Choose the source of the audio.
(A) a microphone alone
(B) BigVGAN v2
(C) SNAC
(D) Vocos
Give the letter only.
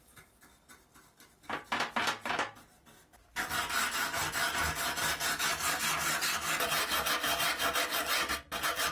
A